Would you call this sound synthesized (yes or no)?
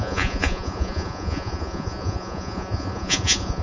yes